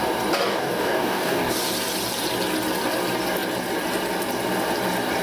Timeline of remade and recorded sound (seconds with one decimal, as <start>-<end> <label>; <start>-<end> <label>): 0.0-0.5 recorded; 0.5-1.5 remade; 1.5-5.2 recorded